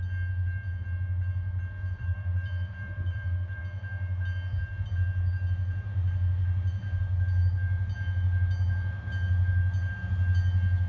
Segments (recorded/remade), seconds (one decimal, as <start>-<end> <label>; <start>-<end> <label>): 0.0-1.8 recorded; 1.8-3.6 remade; 3.6-10.9 recorded